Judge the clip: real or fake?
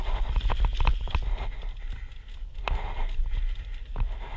real